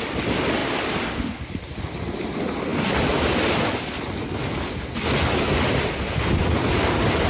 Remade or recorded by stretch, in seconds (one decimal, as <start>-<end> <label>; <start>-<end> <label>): 0.0-7.3 recorded